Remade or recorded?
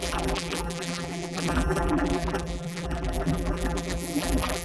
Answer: remade